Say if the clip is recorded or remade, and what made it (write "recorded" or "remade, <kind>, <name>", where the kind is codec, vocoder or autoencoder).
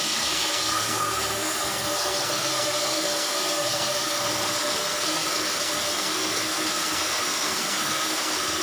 remade, codec, SNAC